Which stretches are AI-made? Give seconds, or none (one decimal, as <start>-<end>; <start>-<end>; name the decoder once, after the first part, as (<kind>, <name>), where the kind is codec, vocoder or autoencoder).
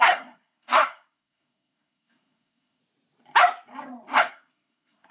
0.0-2.8 (codec, SNAC); 4.2-5.1